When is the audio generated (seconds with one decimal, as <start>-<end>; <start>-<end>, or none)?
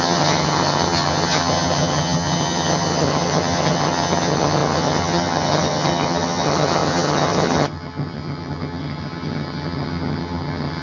0.0-10.8